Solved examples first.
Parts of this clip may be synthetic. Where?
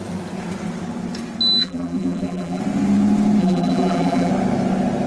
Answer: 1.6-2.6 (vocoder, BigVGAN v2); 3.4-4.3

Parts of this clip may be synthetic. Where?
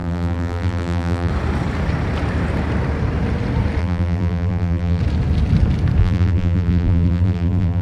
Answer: 0.0-1.3 (vocoder, BigVGAN v2); 3.8-5.0; 6.0-7.8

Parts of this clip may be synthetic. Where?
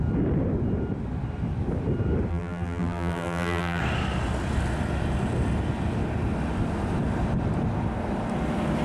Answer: 2.3-3.8 (vocoder, BigVGAN v2)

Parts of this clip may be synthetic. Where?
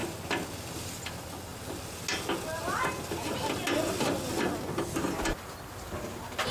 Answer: 0.8-1.5 (vocoder, BigVGAN v2); 5.3-6.5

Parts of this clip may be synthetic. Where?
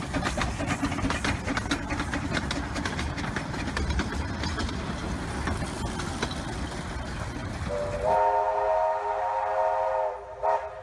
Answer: 7.4-8.0 (vocoder, BigVGAN v2)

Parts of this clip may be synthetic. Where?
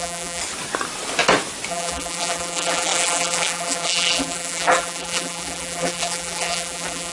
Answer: 0.0-0.4 (vocoder, BigVGAN v2); 1.7-7.1